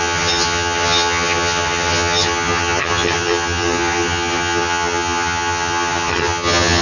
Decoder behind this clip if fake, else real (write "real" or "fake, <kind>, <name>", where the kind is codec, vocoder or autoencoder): fake, vocoder, HiFi-GAN